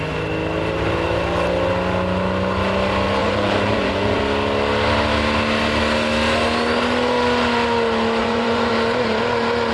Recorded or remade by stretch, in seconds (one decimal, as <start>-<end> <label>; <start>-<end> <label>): 0.0-3.2 recorded; 3.2-4.2 remade; 4.2-8.2 recorded; 8.2-8.7 remade; 8.7-9.7 recorded